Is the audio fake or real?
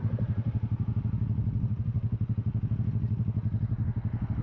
real